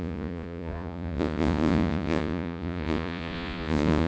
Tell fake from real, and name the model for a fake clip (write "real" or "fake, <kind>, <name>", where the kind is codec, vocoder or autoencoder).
fake, vocoder, Vocos